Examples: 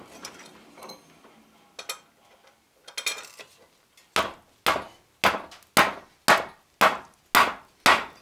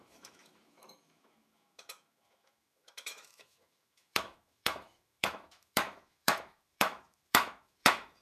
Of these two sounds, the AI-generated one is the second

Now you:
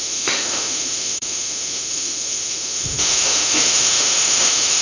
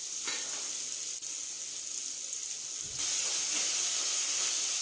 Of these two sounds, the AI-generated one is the first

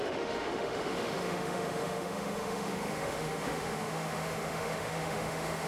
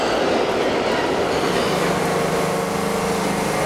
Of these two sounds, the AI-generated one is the first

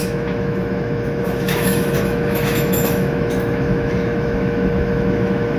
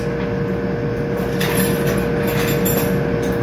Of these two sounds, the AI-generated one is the first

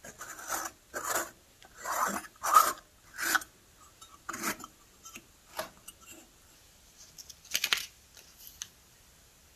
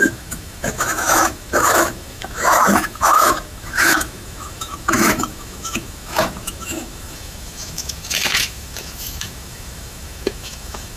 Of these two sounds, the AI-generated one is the second